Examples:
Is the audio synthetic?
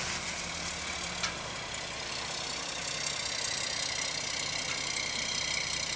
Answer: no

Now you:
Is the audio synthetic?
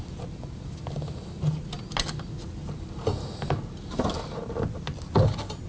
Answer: no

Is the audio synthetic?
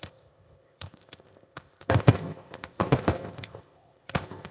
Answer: yes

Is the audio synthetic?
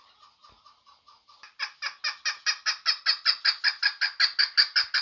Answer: no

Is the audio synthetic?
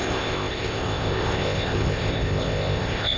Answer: yes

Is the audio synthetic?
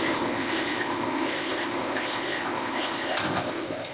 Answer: yes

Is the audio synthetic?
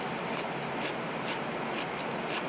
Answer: no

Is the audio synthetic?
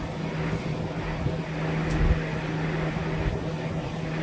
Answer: no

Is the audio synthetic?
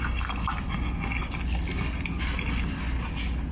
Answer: no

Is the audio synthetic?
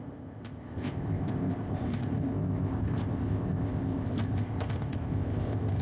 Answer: yes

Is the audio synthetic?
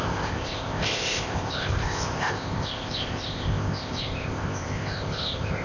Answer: yes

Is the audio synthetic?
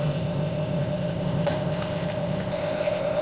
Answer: yes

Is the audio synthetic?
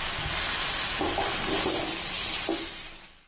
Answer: no